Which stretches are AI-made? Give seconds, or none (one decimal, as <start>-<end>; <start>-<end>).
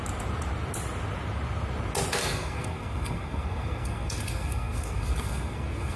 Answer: 2.2-6.0